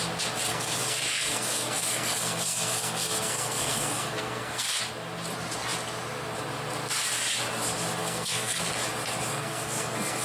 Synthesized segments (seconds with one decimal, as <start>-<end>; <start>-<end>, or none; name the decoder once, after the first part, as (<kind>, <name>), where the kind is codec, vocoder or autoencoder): 0.5-4.8 (codec, SNAC); 8.0-8.7; 9.3-10.2